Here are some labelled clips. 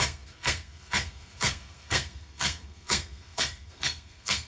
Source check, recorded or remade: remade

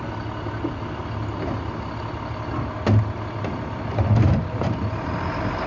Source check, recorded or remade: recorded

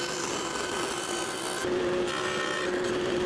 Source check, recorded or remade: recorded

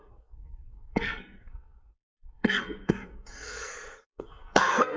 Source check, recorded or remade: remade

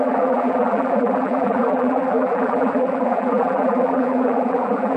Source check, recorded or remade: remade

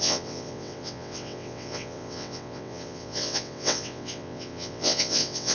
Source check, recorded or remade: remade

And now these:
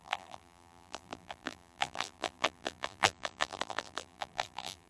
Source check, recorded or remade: remade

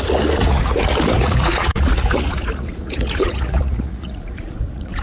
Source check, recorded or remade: remade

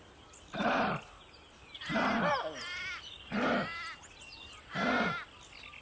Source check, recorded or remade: recorded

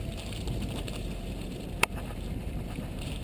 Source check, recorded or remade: remade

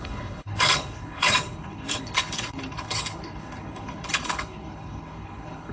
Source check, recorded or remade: remade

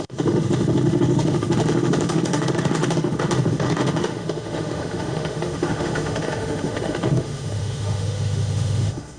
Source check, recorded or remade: remade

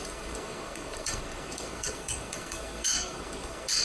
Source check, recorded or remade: remade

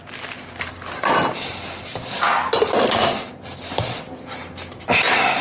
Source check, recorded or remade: recorded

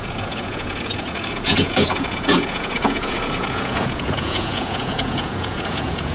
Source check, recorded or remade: remade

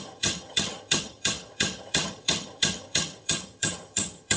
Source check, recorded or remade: remade